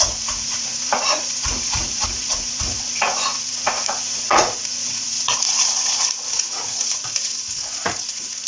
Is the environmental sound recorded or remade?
remade